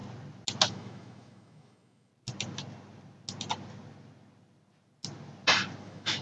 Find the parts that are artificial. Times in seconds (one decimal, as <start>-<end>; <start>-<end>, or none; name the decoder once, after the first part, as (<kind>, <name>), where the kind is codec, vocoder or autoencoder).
0.7-2.1 (autoencoder, DAC-VAE); 5.8-6.2